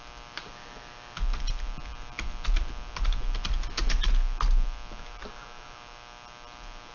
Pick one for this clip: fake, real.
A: real